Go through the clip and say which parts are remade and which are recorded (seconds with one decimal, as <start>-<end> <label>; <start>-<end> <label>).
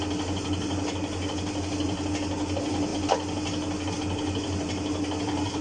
0.0-5.6 recorded